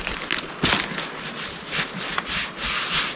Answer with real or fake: real